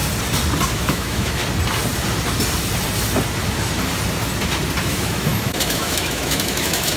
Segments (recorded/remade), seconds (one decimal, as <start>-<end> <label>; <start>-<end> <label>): 0.0-0.7 recorded; 0.7-1.4 remade; 1.4-4.8 recorded; 4.8-7.0 remade